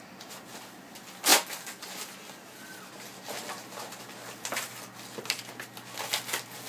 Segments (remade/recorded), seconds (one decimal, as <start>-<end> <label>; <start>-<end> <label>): 0.0-6.7 recorded